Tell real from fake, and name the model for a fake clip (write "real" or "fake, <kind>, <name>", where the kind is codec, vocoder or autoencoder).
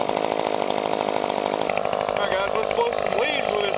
real